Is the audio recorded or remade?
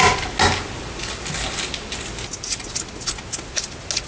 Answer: recorded